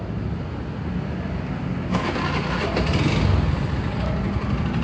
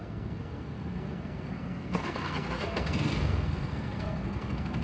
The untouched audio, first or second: first